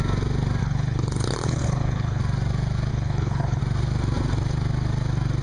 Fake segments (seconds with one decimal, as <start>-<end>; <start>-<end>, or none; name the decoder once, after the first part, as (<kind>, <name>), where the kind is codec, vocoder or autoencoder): 0.6-2.2 (codec, HILCodec); 2.9-3.6